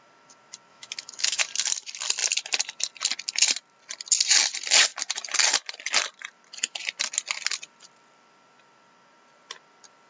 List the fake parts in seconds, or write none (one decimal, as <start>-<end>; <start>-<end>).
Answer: 0.7-1.4